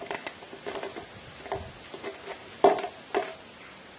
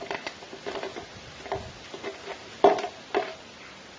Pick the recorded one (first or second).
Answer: first